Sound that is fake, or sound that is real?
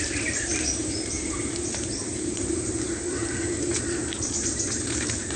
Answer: fake